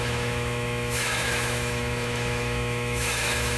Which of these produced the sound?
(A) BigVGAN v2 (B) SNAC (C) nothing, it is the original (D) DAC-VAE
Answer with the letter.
D